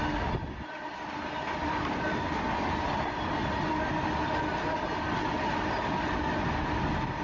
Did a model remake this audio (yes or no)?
no